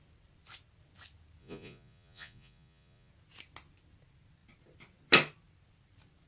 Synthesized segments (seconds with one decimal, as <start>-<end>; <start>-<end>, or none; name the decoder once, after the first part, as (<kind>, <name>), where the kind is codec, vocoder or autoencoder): 1.4-3.1 (vocoder, Vocos)